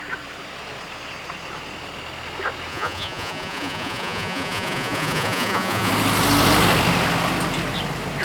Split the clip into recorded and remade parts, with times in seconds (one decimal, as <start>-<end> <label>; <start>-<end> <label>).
0.0-2.7 recorded; 2.7-5.9 remade; 5.9-8.2 recorded